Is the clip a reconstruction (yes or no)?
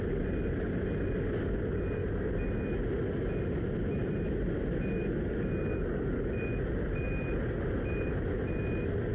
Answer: no